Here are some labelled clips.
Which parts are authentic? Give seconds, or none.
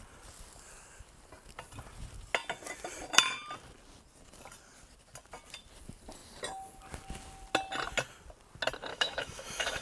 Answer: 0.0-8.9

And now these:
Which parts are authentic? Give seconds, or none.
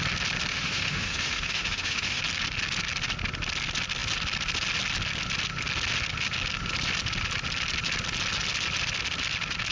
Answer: 0.0-0.5; 2.2-9.7